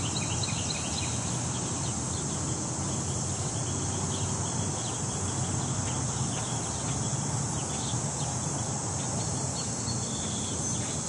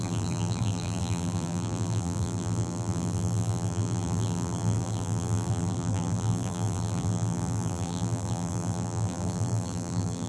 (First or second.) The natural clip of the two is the first